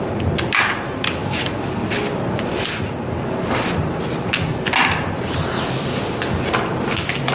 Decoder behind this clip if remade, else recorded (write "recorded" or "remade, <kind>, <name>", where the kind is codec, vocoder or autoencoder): recorded